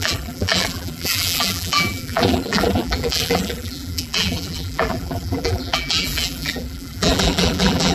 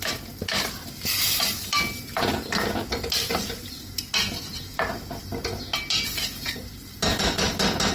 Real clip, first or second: second